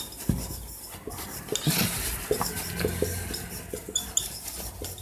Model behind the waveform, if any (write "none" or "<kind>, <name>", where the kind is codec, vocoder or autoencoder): none